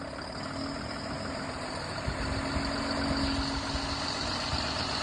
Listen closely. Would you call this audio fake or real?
real